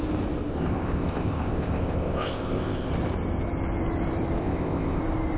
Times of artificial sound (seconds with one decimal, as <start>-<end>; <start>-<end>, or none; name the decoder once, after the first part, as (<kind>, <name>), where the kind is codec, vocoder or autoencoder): 0.5-2.9 (codec, ZipCodec); 4.4-5.0

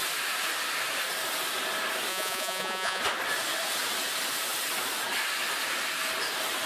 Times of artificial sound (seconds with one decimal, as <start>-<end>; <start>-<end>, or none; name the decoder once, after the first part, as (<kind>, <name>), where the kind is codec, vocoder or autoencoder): 2.1-3.0 (vocoder, Vocos)